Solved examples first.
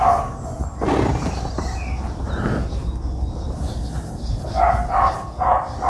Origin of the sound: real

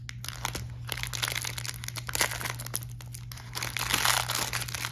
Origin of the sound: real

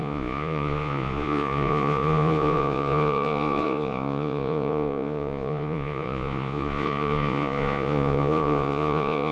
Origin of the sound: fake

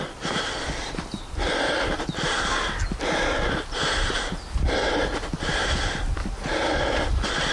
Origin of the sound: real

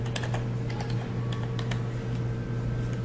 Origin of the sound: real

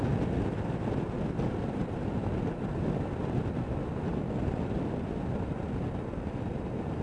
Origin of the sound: real